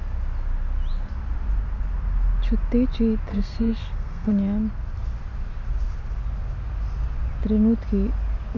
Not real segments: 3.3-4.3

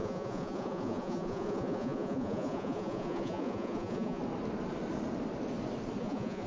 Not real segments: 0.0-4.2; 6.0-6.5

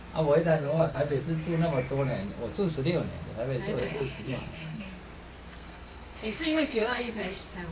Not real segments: 0.5-1.2; 3.8-4.8; 5.5-7.3